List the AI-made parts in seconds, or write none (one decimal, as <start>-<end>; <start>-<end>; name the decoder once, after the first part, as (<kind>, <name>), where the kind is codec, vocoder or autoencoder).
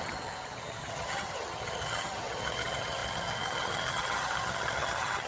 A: 0.0-5.3 (vocoder, HiFi-GAN)